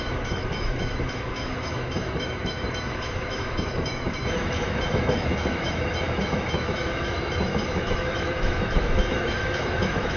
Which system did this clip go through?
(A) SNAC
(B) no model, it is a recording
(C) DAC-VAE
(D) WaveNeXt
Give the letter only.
C